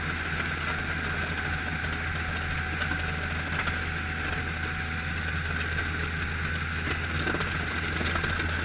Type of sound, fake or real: real